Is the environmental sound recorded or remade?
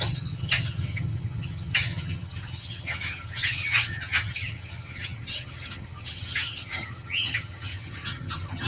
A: remade